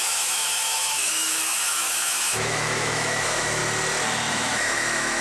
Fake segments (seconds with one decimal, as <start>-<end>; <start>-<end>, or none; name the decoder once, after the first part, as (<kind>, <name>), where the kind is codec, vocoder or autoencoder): 0.0-3.6 (autoencoder, DAC-VAE); 4.3-5.2